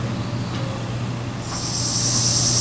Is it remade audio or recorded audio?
recorded